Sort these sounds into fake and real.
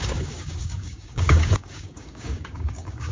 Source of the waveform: fake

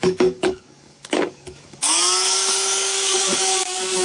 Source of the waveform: fake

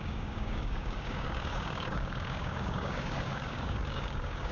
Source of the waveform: fake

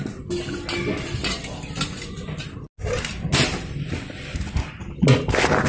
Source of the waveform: real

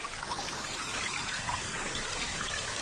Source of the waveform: fake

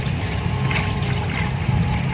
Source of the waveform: real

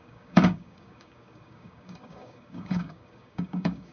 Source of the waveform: fake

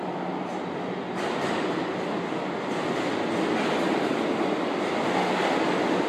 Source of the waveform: real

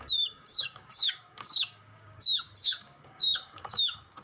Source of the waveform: fake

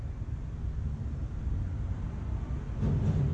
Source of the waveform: real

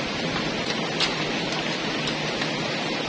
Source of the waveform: real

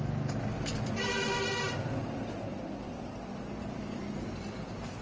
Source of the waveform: real